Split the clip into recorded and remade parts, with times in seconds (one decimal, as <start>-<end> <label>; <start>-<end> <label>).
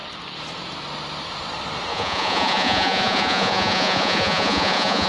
0.0-1.9 recorded; 1.9-5.1 remade